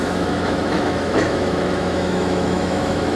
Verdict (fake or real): fake